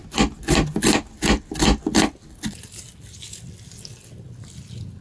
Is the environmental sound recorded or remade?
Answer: recorded